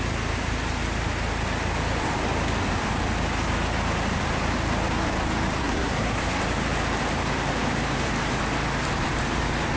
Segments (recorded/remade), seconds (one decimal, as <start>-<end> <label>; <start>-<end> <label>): 0.0-5.6 recorded; 5.6-6.4 remade; 6.4-9.8 recorded